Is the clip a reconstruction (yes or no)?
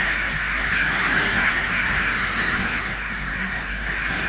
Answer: yes